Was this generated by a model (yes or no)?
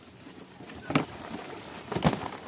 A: no